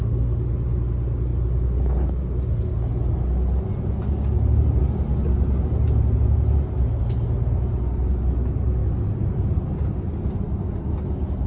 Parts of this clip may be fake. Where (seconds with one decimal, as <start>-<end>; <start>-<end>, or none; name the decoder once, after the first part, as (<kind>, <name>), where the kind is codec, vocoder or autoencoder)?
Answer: 8.8-9.6 (vocoder, BigVGAN v2)